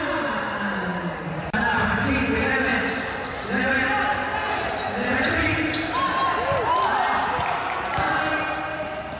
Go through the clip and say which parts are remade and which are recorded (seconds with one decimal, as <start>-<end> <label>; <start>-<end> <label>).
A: 0.0-9.2 recorded